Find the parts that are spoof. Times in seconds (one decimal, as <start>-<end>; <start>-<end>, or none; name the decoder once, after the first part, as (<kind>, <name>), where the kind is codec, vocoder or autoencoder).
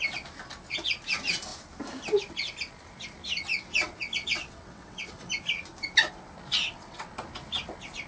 3.7-5.3 (vocoder, WaveNeXt); 6.6-7.1